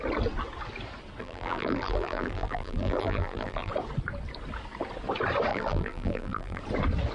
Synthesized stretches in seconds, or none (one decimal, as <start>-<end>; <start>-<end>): 1.2-3.7; 5.5-6.6